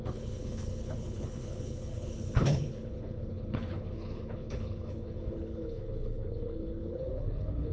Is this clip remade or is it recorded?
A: remade